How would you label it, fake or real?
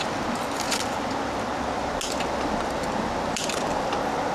real